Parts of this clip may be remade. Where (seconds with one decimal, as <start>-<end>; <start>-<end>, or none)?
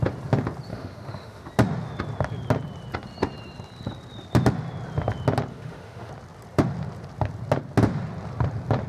0.7-1.5; 5.5-6.1